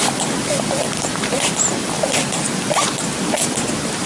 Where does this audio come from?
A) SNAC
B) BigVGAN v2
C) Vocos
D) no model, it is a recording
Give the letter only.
B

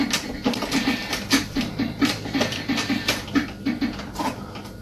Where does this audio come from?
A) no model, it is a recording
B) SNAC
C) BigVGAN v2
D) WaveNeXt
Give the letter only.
C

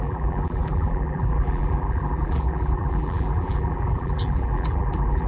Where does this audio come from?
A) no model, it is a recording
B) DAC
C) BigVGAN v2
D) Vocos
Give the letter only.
C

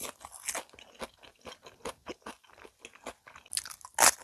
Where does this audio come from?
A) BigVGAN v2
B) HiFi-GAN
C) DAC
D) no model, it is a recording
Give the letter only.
D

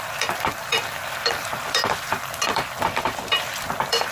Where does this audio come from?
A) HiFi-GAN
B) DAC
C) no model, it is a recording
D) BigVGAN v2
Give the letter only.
D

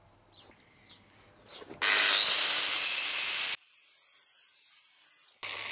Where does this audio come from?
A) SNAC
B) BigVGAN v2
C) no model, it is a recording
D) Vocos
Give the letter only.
C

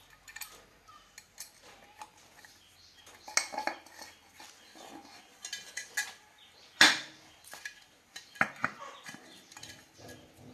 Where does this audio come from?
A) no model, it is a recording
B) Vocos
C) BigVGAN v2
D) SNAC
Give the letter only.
A